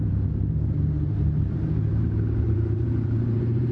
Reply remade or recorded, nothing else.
remade